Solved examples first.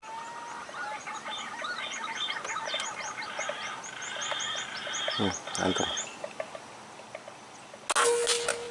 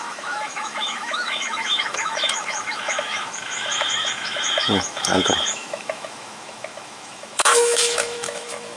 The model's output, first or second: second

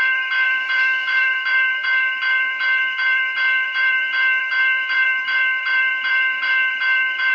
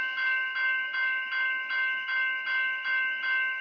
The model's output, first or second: first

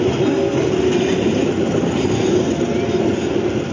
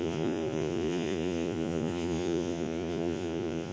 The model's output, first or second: second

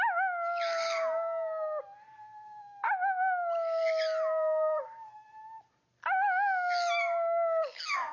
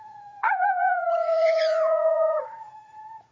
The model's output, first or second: second